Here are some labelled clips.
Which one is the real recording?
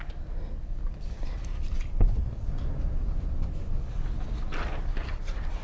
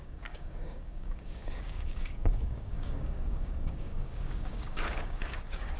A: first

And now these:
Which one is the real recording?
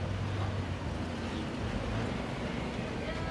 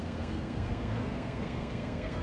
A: first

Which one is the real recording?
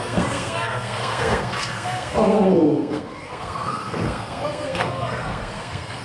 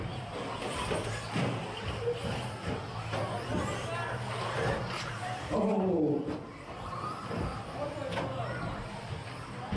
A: second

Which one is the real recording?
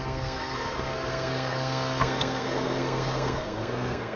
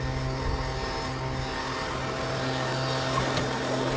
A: second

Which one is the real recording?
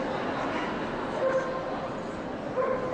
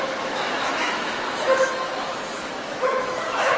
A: first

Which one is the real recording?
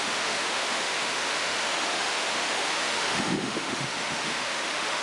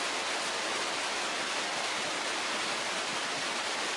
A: second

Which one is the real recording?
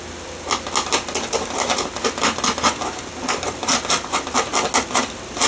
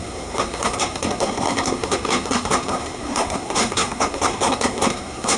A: first